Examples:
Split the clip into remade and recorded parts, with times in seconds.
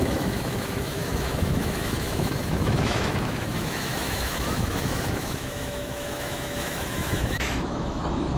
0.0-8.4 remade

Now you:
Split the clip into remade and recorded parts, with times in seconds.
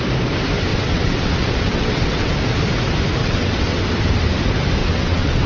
0.0-0.7 recorded; 0.7-2.3 remade; 2.3-3.2 recorded; 3.2-3.8 remade; 3.8-4.8 recorded; 4.8-5.5 remade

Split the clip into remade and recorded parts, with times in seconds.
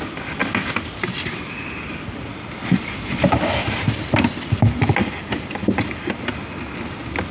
0.0-7.3 remade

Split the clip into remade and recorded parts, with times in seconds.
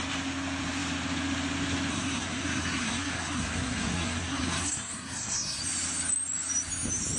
0.0-1.9 recorded; 1.9-5.6 remade; 5.6-7.2 recorded